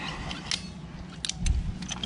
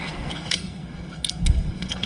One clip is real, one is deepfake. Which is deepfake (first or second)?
second